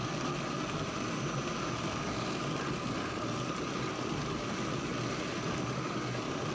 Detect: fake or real real